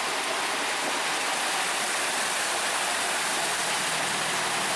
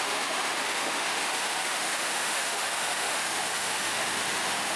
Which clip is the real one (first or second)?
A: first